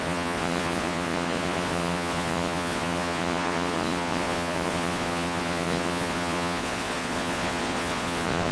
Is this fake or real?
fake